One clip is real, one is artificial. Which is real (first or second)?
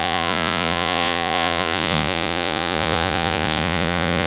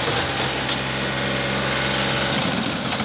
second